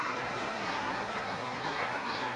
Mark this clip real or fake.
fake